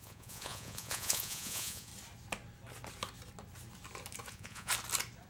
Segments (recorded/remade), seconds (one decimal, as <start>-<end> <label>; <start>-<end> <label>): 0.0-1.9 remade; 1.9-4.3 recorded; 4.3-4.7 remade; 4.7-5.3 recorded